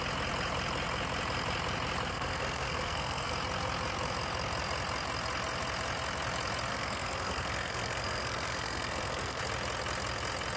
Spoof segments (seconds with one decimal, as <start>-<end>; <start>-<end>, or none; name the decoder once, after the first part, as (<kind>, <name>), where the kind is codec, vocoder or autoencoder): 2.1-3.3 (codec, SNAC); 6.7-9.4